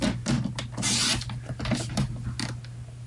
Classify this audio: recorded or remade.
recorded